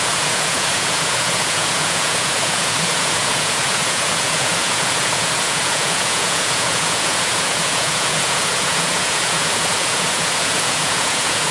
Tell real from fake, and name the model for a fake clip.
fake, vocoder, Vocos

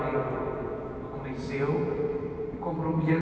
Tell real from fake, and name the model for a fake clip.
real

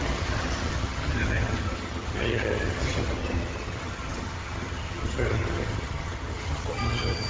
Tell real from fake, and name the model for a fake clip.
fake, vocoder, HiFi-GAN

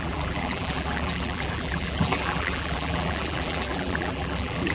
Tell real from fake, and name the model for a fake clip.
fake, vocoder, BigVGAN v2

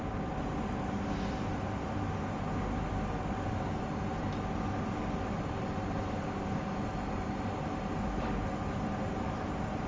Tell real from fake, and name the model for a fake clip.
real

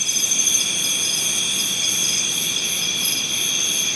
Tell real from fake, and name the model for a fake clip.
real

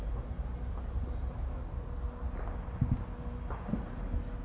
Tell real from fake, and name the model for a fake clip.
real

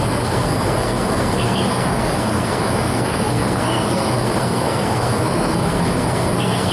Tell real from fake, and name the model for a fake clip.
fake, codec, SNAC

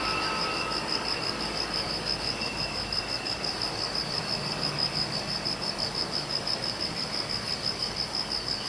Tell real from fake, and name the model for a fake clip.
fake, codec, DAC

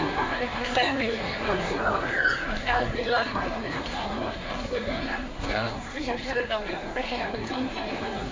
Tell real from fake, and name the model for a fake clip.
fake, codec, SNAC